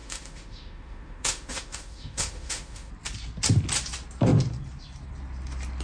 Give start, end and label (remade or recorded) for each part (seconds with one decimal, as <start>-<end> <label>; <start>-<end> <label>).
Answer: 0.0-2.9 remade; 2.9-5.8 recorded